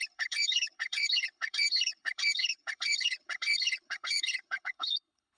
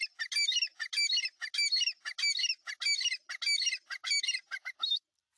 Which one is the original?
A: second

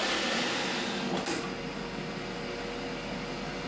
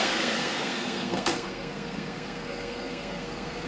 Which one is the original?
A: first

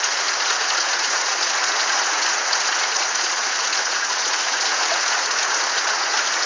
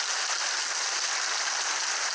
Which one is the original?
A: second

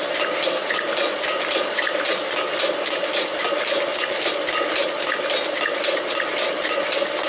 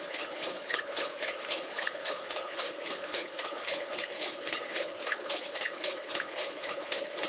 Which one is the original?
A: first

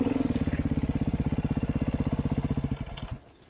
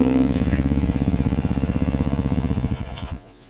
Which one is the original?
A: first